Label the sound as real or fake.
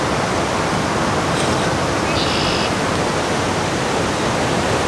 real